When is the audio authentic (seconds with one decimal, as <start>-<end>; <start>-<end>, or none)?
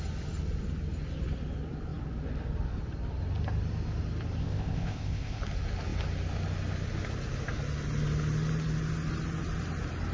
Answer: 0.0-4.4; 5.4-10.1